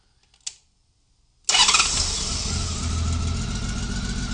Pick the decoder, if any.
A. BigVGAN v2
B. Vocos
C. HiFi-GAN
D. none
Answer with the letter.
D